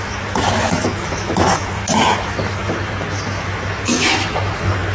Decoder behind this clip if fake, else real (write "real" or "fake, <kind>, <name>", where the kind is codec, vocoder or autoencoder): fake, autoencoder, DAC-VAE